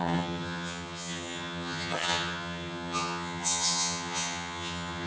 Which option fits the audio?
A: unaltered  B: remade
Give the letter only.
B